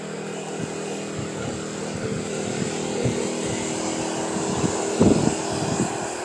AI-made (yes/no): no